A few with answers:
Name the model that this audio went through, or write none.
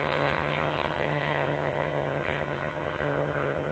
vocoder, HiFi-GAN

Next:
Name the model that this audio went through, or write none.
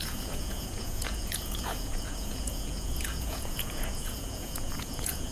vocoder, Vocos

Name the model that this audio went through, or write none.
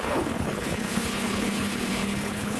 codec, HILCodec